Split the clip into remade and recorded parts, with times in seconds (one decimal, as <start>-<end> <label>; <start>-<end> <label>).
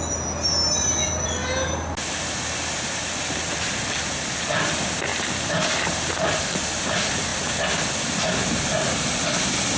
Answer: 0.0-5.1 recorded; 5.1-6.1 remade; 6.1-9.8 recorded